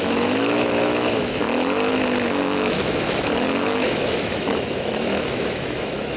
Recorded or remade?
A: remade